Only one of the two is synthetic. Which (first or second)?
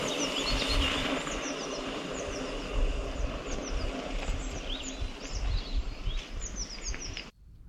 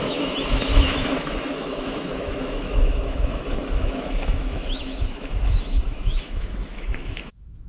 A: second